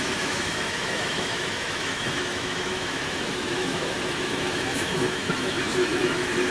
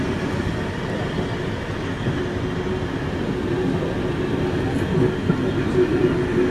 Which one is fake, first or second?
first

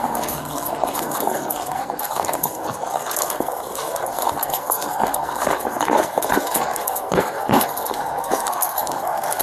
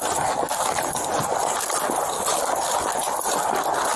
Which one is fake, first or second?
first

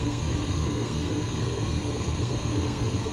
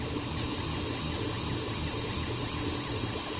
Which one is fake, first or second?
first